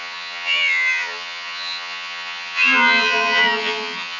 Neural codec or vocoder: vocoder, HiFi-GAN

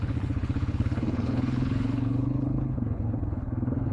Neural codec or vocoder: codec, HILCodec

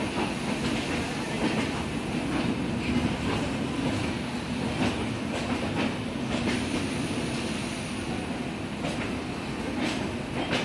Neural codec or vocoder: none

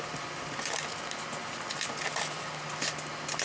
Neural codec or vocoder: none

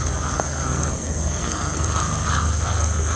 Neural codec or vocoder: codec, SNAC